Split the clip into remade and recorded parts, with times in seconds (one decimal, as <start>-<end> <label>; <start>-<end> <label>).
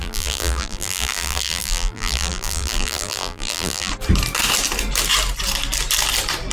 0.0-3.9 remade; 3.9-6.5 recorded